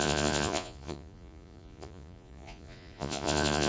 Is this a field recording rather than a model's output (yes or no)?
no